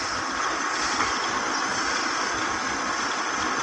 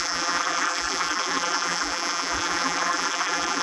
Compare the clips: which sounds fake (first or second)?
second